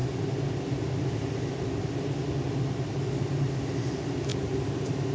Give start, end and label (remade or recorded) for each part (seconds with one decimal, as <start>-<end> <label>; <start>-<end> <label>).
0.0-4.3 recorded; 4.3-5.1 remade